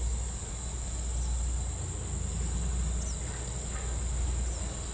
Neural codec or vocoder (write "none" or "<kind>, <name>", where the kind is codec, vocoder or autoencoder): none